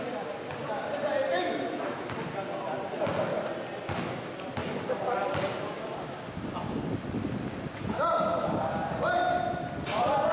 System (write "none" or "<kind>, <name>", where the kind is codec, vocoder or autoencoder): none